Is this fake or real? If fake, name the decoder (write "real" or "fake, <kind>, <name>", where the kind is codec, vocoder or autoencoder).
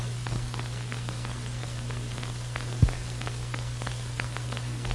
fake, codec, SNAC